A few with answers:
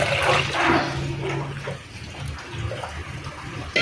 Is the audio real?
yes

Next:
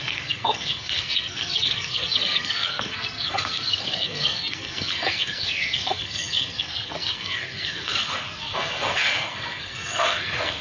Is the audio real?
no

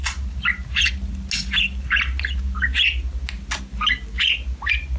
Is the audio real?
yes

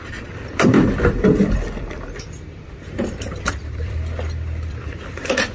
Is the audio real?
no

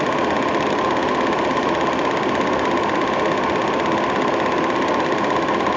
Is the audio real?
yes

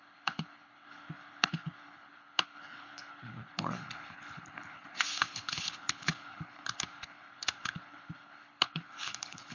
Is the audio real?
no